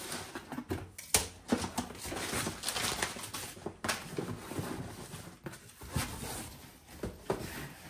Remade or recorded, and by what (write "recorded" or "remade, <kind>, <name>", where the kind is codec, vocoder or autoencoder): recorded